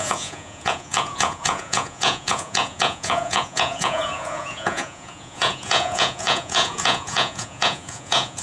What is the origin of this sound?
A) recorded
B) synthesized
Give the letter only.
B